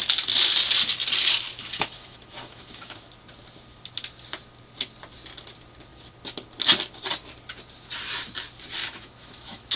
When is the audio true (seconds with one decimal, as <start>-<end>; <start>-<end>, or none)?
0.0-1.6; 3.0-8.8